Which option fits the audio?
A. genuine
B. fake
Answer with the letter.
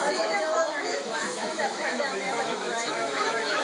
B